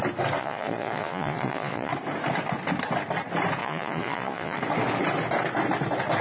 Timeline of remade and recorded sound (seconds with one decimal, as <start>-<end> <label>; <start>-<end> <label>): 0.0-0.4 recorded; 0.4-1.9 remade; 1.9-3.6 recorded; 3.6-4.6 remade; 4.6-6.2 recorded